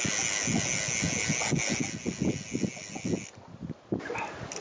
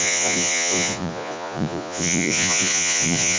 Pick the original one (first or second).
first